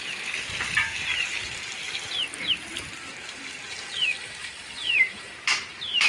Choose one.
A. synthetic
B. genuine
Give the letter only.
A